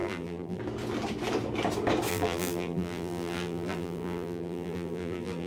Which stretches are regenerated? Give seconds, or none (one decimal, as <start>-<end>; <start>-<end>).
0.0-0.6; 2.1-5.5